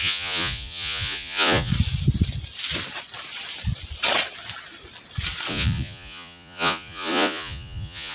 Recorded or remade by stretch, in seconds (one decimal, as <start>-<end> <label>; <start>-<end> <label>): 0.0-1.7 remade; 1.7-5.5 recorded; 5.5-8.1 remade